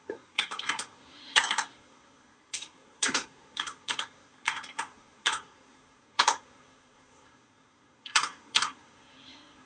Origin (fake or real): fake